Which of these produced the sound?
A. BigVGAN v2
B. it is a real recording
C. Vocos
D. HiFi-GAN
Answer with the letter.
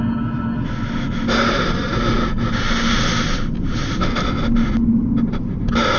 B